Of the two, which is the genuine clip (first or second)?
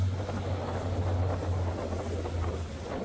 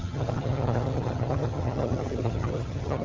first